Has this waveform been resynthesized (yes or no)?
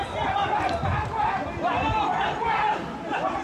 no